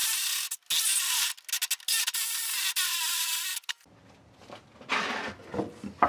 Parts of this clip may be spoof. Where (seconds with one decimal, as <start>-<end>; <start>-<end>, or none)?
none